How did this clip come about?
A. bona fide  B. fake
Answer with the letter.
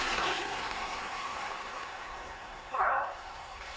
B